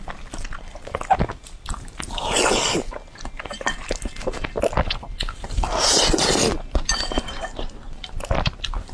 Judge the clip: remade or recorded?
recorded